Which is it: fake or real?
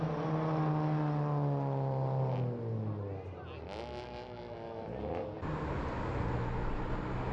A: real